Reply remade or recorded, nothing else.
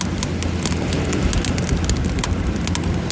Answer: recorded